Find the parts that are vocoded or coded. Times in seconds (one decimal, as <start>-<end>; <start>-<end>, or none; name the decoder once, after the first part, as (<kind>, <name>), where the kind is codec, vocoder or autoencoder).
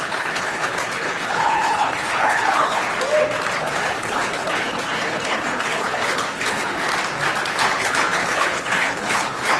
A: 0.0-2.8 (codec, HILCodec); 3.6-6.9; 7.6-9.6